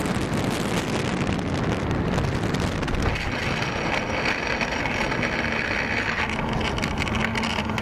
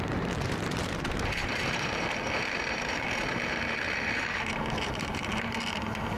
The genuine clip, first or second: first